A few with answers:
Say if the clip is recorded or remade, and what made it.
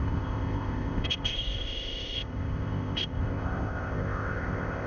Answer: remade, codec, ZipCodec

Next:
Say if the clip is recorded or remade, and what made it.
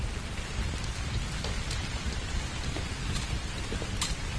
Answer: recorded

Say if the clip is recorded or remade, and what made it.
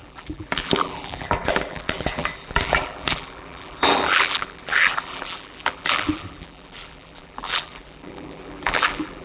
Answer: remade, vocoder, BigVGAN v2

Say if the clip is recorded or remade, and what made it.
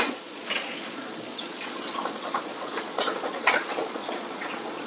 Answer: remade, vocoder, Vocos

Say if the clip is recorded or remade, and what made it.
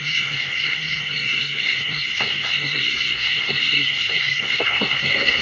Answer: remade, codec, SNAC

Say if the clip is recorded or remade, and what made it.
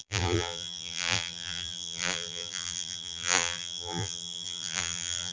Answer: remade, vocoder, BigVGAN v2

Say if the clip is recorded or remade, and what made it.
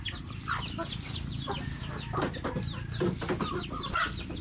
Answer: recorded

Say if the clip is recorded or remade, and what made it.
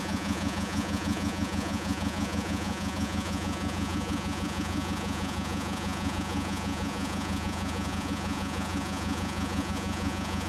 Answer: remade, vocoder, Vocos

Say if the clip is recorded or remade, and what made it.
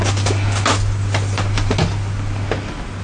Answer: recorded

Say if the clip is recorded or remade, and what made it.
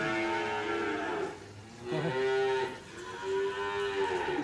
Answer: recorded